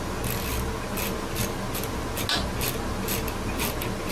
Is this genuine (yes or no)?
yes